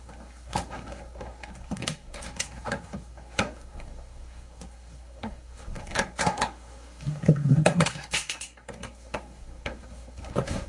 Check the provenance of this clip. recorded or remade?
remade